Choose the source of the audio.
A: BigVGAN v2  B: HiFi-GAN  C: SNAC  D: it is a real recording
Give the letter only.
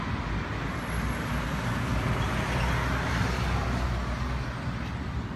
D